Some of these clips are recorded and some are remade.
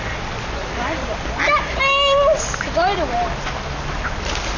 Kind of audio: recorded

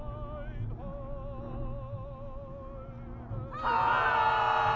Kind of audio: recorded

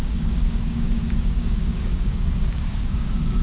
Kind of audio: remade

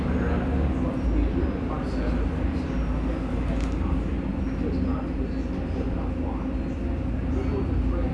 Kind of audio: recorded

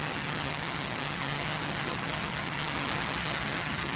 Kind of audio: remade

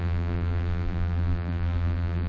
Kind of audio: remade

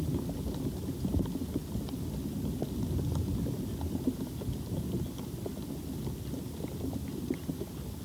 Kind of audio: recorded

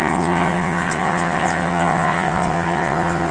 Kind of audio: remade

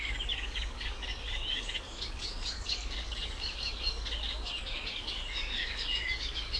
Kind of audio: remade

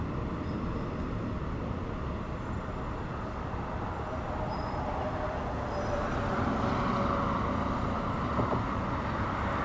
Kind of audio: recorded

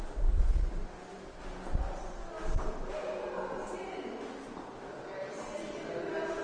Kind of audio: recorded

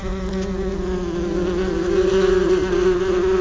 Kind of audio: recorded